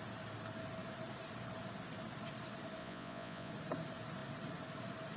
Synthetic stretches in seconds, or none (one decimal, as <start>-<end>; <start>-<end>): 2.8-3.5